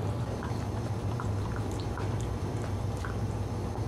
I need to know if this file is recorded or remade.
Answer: recorded